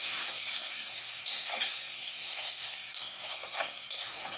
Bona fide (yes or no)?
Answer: no